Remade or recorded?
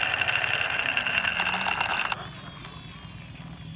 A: recorded